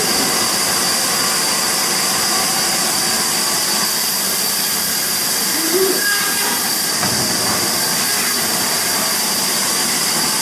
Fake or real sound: fake